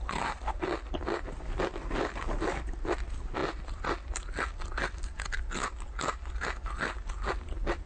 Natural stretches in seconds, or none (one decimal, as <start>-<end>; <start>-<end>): 0.0-7.9